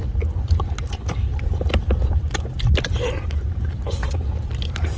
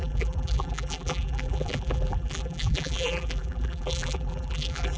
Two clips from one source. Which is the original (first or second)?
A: first